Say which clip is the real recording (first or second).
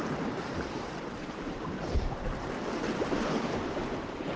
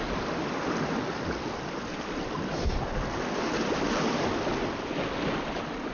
second